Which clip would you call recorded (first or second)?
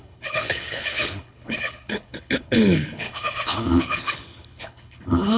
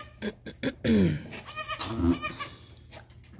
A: second